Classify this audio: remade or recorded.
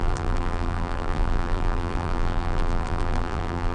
remade